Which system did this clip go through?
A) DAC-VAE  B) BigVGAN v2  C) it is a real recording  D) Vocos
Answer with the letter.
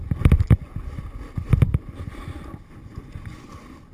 B